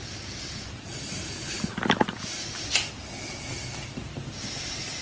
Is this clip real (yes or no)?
yes